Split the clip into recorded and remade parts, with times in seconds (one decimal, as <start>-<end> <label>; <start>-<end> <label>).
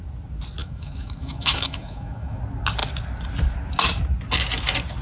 0.0-0.6 recorded; 0.6-2.4 remade; 2.4-5.0 recorded